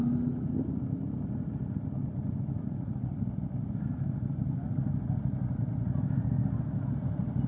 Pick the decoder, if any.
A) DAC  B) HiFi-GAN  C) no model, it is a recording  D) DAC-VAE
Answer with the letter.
C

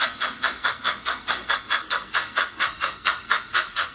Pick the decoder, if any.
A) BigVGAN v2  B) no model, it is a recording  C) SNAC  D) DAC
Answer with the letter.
C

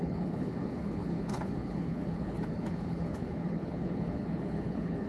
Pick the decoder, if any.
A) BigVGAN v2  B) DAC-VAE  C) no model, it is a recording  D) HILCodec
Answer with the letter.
D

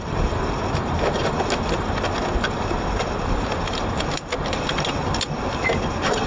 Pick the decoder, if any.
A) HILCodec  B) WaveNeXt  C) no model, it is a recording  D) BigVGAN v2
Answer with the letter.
C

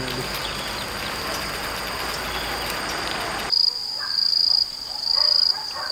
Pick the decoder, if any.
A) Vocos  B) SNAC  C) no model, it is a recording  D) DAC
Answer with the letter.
C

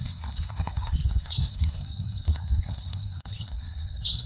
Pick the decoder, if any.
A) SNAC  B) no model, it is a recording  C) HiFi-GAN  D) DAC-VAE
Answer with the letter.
A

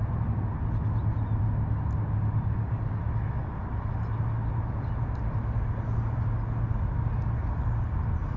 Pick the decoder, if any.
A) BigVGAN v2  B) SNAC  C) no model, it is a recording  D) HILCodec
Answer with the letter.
C